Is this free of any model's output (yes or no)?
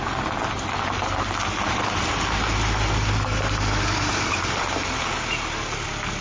yes